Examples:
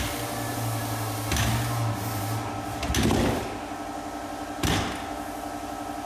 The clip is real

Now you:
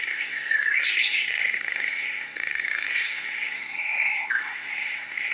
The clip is fake